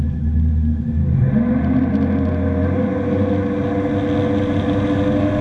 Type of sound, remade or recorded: recorded